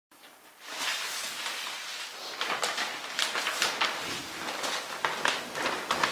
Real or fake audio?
real